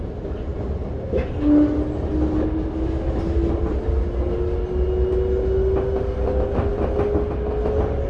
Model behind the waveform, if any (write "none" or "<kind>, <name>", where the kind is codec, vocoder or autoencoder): none